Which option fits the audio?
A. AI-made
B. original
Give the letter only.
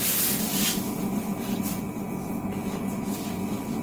B